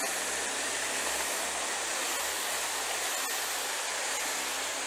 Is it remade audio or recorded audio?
recorded